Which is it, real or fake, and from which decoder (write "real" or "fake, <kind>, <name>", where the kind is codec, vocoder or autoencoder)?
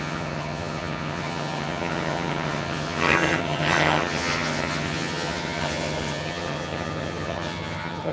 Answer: fake, vocoder, HiFi-GAN